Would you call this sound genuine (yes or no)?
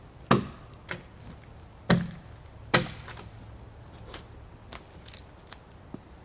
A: yes